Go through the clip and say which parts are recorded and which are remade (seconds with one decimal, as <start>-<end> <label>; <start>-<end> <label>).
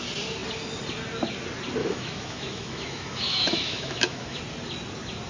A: 0.0-1.8 recorded; 1.8-4.4 remade; 4.4-5.3 recorded